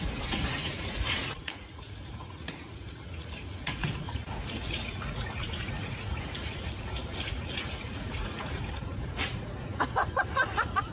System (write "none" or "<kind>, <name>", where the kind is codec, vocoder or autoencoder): vocoder, Vocos